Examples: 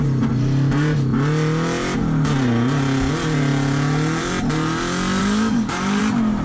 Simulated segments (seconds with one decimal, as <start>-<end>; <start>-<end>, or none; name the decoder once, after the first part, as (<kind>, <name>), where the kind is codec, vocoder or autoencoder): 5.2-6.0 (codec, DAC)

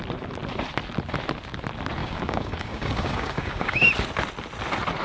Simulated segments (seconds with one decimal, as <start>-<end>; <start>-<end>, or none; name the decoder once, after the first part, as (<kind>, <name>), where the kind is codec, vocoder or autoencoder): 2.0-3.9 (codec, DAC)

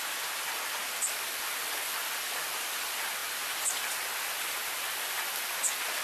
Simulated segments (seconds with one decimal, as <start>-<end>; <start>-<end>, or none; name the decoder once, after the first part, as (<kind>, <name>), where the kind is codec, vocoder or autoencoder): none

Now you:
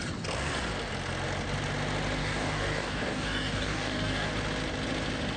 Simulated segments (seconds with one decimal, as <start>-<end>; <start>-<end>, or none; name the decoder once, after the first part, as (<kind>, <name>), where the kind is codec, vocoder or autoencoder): 2.2-4.3 (codec, DAC)